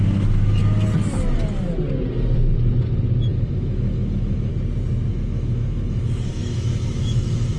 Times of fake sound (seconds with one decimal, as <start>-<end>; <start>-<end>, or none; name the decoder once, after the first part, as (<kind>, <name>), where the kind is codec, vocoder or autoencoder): 0.0-0.6 (autoencoder, DAC-VAE); 3.3-4.5; 5.1-7.6